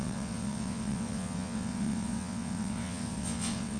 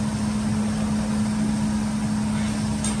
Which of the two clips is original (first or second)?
second